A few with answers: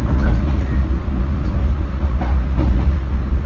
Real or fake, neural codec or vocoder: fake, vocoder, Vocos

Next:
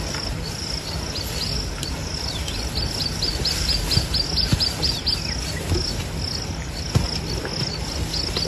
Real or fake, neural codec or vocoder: real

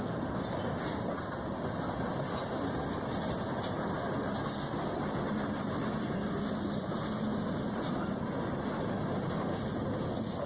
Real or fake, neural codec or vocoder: real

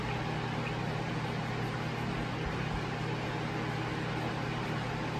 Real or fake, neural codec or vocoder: real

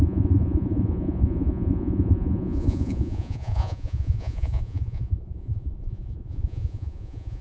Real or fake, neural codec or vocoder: fake, vocoder, Vocos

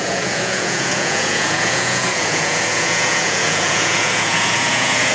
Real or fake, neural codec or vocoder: fake, vocoder, Vocos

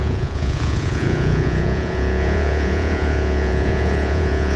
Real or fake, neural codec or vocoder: fake, vocoder, Vocos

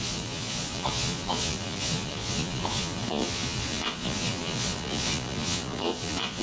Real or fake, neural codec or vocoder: fake, vocoder, Vocos